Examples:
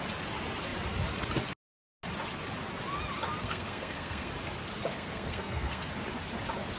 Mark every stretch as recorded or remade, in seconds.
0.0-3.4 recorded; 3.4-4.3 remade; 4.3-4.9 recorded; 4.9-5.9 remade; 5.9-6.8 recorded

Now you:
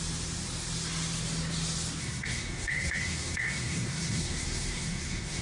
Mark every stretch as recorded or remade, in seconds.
0.0-2.0 recorded; 2.0-5.4 remade

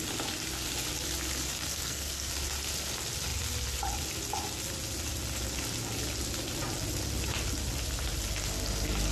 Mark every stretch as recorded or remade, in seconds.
0.0-1.7 recorded; 1.7-2.3 remade; 2.3-9.1 recorded

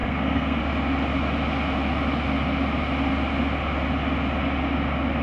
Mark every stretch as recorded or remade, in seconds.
0.0-0.6 remade; 0.6-5.2 recorded

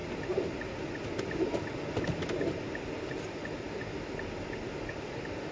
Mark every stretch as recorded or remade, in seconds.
0.0-5.5 recorded

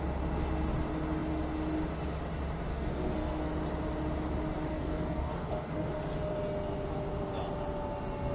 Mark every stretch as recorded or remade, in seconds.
0.0-2.7 recorded; 2.7-3.5 remade; 3.5-4.7 recorded; 4.7-5.9 remade; 5.9-8.3 recorded

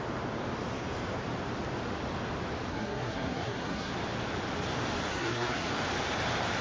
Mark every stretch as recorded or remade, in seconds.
0.0-2.7 recorded; 2.7-3.9 remade; 3.9-5.1 recorded; 5.1-5.7 remade; 5.7-6.6 recorded

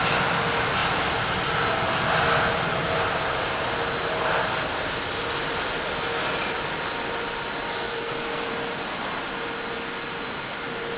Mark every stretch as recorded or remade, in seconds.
0.0-7.7 recorded; 7.7-8.5 remade; 8.5-11.0 recorded